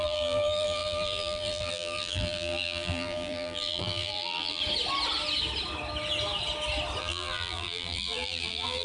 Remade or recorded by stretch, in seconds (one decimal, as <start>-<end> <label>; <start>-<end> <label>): 0.0-4.6 remade; 4.6-7.0 recorded; 7.0-8.8 remade